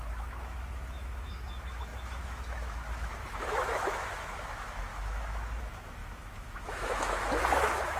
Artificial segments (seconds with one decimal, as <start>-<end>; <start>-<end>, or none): 0.0-8.0